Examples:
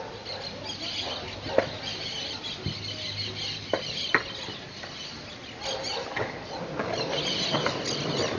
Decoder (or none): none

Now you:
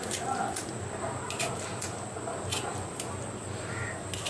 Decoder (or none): none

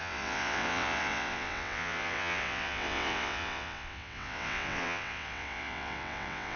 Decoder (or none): vocoder, WaveNeXt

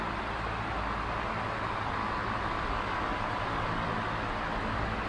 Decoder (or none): none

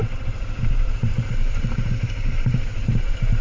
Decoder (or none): vocoder, BigVGAN v2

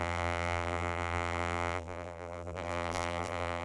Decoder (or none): vocoder, BigVGAN v2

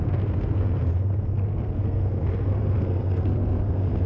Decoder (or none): codec, SNAC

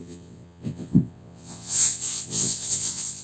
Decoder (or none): vocoder, WaveNeXt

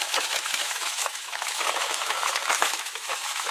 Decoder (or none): autoencoder, DAC-VAE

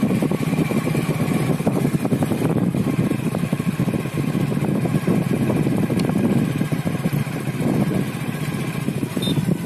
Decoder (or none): none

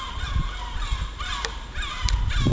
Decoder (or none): vocoder, BigVGAN v2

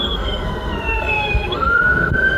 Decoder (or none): codec, SNAC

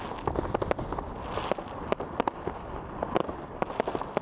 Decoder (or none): none